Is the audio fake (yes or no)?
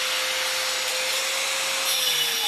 no